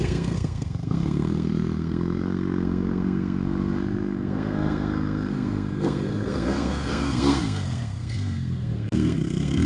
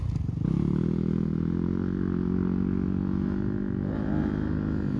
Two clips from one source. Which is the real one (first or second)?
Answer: second